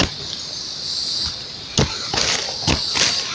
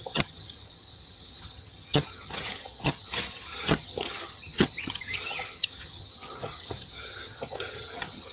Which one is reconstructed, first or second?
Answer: second